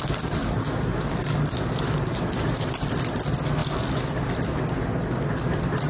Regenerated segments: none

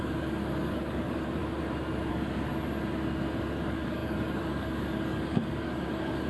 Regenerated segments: 0.0-1.4; 2.1-2.5; 3.4-6.3

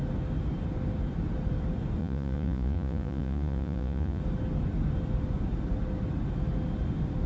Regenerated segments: 2.0-4.2

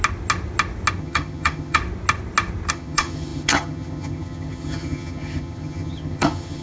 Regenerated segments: 1.0-1.8; 2.7-6.6